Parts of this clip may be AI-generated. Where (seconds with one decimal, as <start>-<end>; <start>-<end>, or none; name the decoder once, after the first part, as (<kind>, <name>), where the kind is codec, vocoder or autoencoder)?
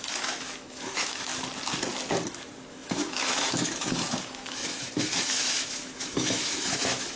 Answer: 0.0-1.3 (autoencoder, DAC-VAE); 2.7-7.2